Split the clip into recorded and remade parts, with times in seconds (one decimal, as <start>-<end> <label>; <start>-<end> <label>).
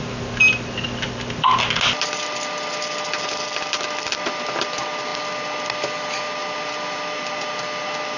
0.0-8.2 recorded